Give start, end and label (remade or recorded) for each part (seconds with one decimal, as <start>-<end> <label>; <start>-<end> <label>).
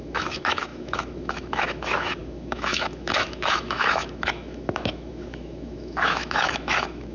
0.0-7.1 remade